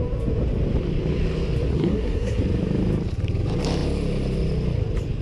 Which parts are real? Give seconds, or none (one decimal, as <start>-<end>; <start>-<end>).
0.0-1.7; 2.4-5.2